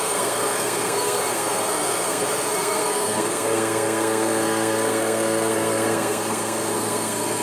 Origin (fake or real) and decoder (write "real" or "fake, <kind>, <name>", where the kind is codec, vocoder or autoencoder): fake, codec, SNAC